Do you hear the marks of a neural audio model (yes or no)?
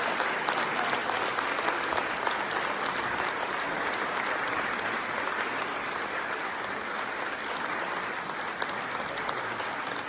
no